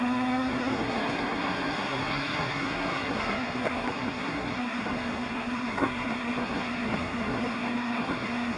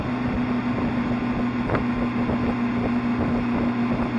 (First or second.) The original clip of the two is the second